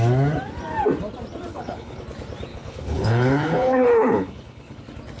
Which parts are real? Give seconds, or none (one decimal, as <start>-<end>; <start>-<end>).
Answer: 0.0-1.5; 2.0-2.5; 4.8-5.2